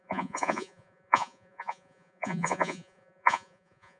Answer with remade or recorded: remade